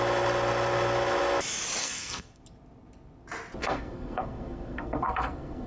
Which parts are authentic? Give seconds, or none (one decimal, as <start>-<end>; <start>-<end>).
0.0-1.8; 2.4-3.6

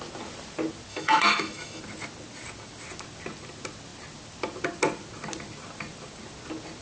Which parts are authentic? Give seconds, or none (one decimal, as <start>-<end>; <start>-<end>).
0.0-0.9; 1.8-6.8

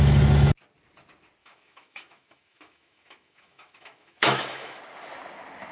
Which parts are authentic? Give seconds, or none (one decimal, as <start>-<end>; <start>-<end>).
0.0-1.4; 4.8-5.7

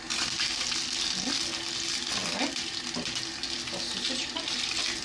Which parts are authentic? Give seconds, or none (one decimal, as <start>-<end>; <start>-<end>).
0.0-5.0

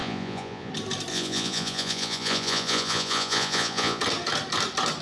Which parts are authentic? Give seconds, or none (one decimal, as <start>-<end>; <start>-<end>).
0.7-1.1; 4.0-5.0